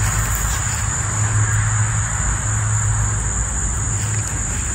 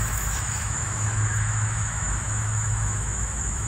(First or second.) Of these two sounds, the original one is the first